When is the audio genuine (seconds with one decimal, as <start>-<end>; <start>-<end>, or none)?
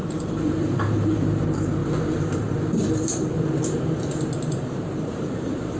none